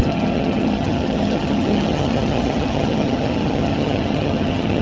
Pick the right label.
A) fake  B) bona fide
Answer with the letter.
A